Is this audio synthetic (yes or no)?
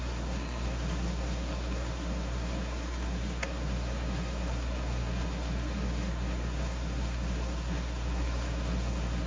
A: yes